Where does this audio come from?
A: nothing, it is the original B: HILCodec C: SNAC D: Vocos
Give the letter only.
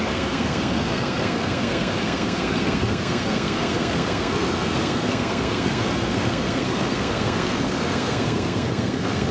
C